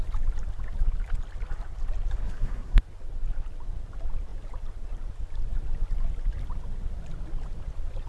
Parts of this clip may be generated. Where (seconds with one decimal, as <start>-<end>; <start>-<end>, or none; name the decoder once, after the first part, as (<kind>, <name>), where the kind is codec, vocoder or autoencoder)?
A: 2.2-2.8 (codec, SNAC)